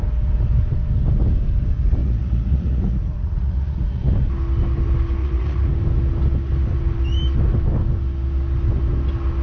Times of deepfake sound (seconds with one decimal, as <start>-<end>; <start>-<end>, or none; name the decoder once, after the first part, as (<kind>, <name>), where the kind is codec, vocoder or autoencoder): 2.0-4.1 (vocoder, Vocos); 5.2-5.7